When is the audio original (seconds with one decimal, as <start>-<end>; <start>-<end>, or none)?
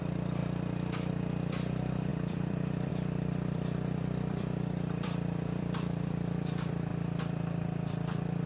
0.4-1.1